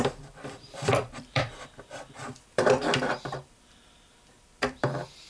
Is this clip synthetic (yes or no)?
yes